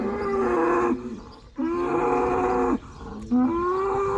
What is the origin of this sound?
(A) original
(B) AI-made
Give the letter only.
A